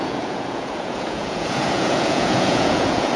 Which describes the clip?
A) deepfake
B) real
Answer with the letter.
A